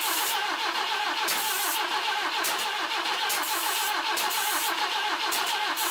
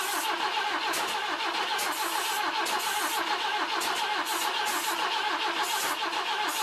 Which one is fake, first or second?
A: first